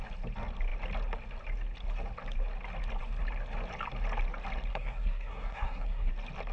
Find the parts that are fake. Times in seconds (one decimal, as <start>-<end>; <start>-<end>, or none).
4.7-6.1